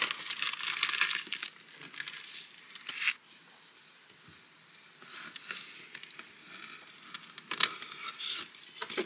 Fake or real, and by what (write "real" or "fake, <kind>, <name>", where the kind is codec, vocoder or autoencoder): real